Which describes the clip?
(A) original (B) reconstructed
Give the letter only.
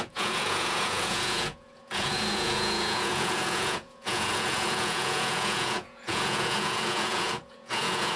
B